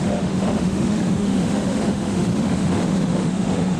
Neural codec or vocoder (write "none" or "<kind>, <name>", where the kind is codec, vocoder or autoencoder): autoencoder, DAC-VAE